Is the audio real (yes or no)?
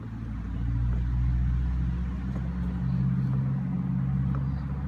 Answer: yes